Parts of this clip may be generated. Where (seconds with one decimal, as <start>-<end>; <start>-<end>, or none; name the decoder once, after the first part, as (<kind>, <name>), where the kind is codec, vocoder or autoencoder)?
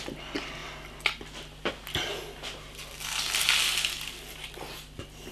none